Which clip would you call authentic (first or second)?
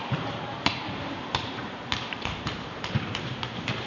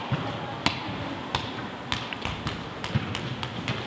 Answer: second